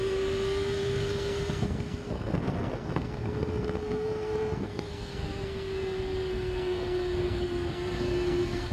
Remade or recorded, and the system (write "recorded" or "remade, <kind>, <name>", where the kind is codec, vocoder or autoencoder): remade, codec, SNAC